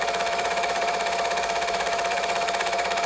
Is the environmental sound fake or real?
fake